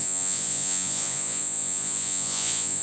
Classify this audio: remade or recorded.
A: remade